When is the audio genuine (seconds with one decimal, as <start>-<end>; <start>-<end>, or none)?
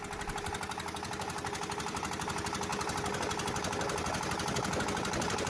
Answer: 0.0-5.5